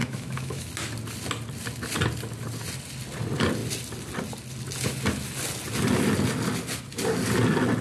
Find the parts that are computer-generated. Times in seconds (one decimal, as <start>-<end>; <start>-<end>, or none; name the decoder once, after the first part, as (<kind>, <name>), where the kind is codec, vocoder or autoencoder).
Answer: 0.0-0.7 (autoencoder, DAC-VAE)

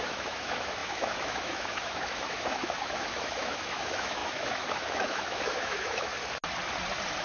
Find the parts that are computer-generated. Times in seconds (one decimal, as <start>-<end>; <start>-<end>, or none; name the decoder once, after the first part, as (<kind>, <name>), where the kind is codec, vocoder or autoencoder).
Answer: 0.0-6.1 (autoencoder, DAC-VAE)

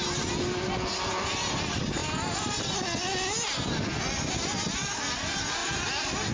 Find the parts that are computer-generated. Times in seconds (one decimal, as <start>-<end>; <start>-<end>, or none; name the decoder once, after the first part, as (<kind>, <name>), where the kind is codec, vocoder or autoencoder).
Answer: none

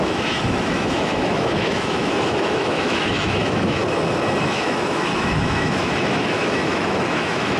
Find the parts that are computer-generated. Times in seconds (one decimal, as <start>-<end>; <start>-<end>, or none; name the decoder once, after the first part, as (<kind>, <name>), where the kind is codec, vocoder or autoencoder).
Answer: 0.0-3.8 (autoencoder, DAC-VAE); 4.4-7.6

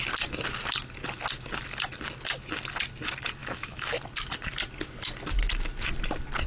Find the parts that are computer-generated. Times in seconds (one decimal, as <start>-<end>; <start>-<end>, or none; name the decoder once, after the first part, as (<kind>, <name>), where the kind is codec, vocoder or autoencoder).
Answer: 3.4-3.9 (autoencoder, DAC-VAE)

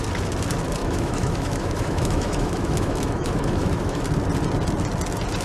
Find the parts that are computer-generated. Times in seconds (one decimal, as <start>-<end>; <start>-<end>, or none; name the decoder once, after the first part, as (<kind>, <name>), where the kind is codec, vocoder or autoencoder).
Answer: 0.8-4.0 (autoencoder, DAC-VAE)

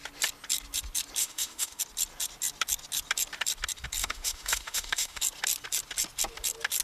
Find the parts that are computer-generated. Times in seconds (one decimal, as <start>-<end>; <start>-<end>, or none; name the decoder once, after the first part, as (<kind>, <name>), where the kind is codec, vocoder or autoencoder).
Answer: 1.2-1.8 (autoencoder, DAC-VAE); 4.0-5.2